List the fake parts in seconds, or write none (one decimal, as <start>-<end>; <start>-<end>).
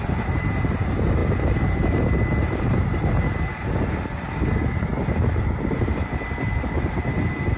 none